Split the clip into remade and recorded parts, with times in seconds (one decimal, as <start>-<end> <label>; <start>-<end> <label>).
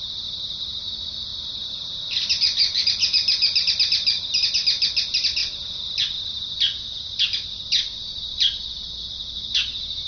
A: 0.0-10.1 recorded